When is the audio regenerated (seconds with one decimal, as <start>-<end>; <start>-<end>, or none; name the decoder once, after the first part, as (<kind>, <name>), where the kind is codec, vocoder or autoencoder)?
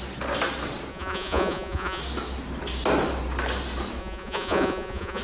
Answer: 0.9-2.0 (vocoder, Vocos); 4.0-5.2